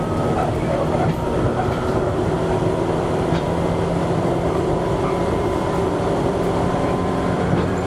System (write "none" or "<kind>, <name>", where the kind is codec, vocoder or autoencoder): vocoder, BigVGAN v2